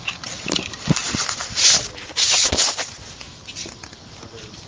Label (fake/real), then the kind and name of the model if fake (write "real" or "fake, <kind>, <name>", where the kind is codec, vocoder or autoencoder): real